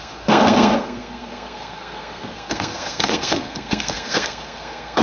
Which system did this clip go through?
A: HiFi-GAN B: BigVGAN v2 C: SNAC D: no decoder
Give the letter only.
C